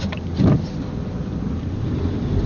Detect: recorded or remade recorded